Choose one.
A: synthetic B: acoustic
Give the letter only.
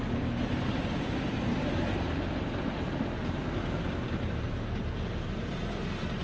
A